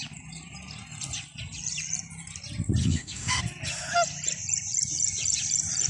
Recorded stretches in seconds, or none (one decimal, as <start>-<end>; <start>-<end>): 0.0-2.8; 3.4-5.9